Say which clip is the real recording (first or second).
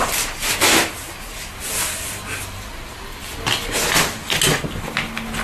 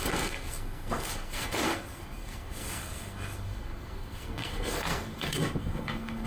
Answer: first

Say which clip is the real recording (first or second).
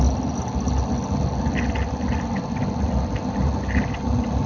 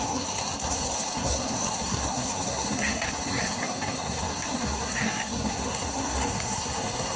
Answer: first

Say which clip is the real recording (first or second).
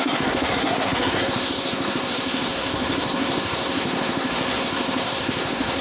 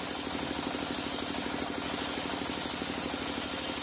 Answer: second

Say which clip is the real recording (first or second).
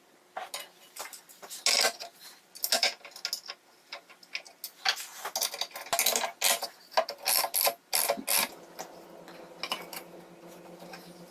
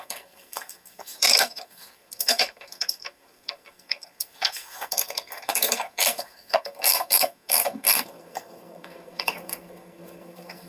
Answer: first